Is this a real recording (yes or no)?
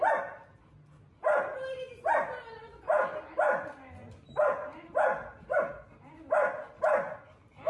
yes